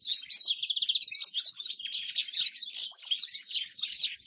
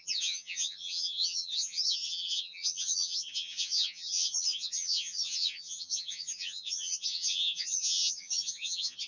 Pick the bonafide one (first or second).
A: first